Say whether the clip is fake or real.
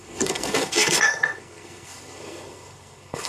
fake